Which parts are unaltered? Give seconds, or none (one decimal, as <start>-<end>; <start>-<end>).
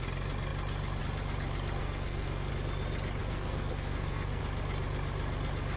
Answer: 0.0-1.8; 2.5-3.2; 4.4-5.8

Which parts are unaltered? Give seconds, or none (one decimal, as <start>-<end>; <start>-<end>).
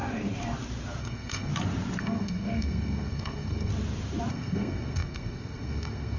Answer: 0.0-1.0; 1.5-2.0; 3.7-4.3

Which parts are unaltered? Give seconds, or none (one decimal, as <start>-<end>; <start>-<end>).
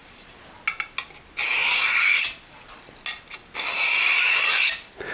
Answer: 0.0-5.1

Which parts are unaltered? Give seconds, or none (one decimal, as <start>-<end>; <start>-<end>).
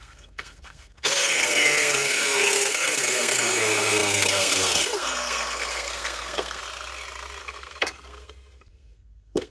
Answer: 6.6-7.4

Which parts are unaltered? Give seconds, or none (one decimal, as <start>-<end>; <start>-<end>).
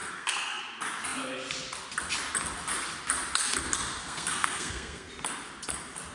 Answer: 0.6-4.0; 5.1-6.1